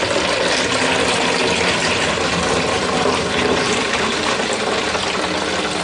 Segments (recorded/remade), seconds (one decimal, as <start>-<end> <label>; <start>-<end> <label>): 0.0-1.8 recorded; 1.8-4.6 remade; 4.6-5.8 recorded